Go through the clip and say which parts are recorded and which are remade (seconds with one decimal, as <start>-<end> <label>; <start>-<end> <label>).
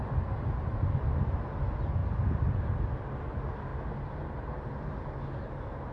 0.0-2.0 recorded; 2.0-2.9 remade; 2.9-5.9 recorded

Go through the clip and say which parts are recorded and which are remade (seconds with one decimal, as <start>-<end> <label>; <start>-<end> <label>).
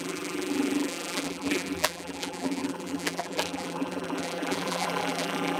0.0-5.6 remade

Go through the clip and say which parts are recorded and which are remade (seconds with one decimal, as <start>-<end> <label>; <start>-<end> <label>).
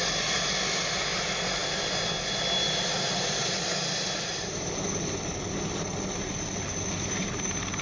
0.0-7.8 recorded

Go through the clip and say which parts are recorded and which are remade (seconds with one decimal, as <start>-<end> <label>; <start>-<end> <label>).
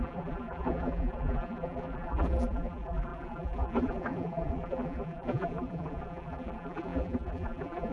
0.0-7.9 remade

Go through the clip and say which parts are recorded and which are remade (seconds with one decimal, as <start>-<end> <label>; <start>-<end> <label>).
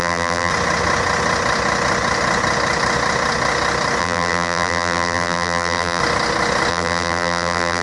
0.0-0.5 remade; 0.5-4.0 recorded; 4.0-6.0 remade; 6.0-6.7 recorded; 6.7-7.8 remade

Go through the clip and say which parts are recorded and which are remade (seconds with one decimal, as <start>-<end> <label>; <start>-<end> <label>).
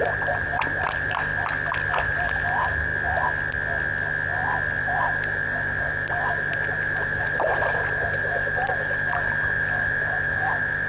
0.0-1.3 remade; 1.3-2.0 recorded; 2.0-2.9 remade; 2.9-4.8 recorded; 4.8-10.9 remade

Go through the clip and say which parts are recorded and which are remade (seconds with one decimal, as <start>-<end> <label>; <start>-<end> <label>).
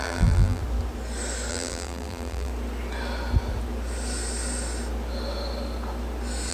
0.0-0.6 remade; 0.6-1.5 recorded; 1.5-2.5 remade; 2.5-6.5 recorded